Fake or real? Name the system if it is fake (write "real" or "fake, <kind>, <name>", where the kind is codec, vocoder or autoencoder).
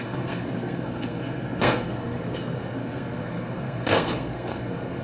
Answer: fake, codec, SNAC